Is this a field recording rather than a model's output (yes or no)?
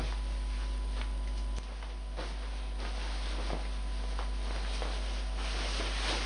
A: yes